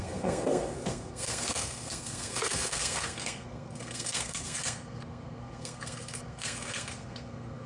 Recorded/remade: remade